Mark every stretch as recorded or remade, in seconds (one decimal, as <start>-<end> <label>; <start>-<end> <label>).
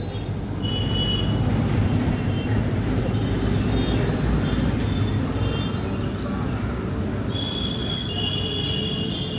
0.0-9.4 recorded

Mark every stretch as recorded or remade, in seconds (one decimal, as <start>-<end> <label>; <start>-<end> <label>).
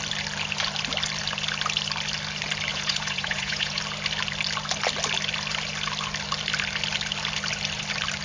0.0-2.7 recorded; 2.7-3.8 remade; 3.8-8.2 recorded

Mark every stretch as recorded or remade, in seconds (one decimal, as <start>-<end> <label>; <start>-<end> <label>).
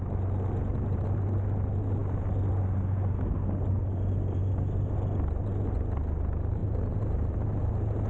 0.0-8.1 recorded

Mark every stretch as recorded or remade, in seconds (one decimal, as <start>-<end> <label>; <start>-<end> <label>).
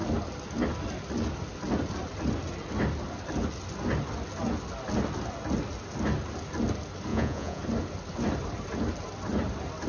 0.0-7.1 recorded; 7.1-7.6 remade; 7.6-9.9 recorded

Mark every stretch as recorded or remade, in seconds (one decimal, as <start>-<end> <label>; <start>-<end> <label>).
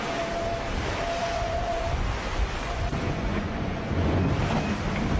0.0-1.2 recorded; 1.2-4.3 remade; 4.3-5.2 recorded